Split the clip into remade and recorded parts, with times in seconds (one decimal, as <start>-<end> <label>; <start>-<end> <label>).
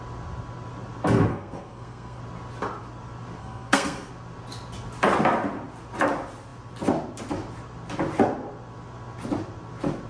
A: 0.0-1.3 recorded; 1.3-2.2 remade; 2.2-3.4 recorded; 3.4-4.1 remade; 4.1-10.1 recorded